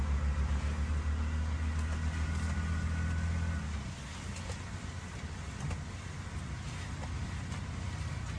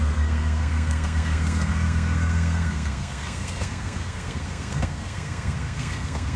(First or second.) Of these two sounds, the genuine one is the first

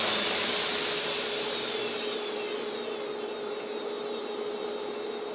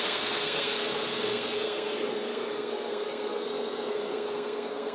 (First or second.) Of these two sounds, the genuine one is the first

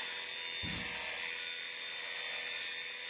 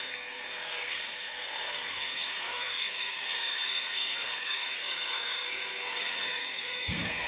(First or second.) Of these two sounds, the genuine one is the first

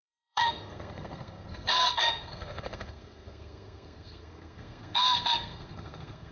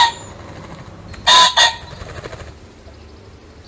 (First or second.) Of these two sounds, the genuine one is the second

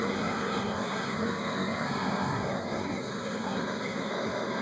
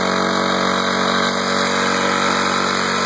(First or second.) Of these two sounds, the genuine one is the second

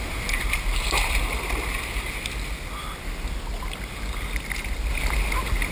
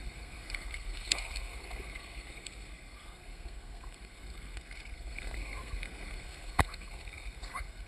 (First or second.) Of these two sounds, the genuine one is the first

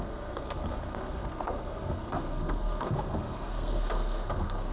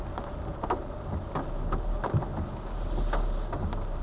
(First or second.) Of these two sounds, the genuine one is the second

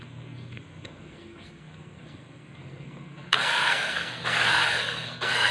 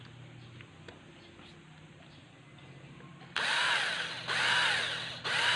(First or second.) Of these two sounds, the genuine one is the second